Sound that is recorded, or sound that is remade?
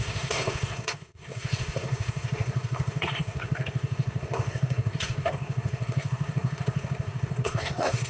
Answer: remade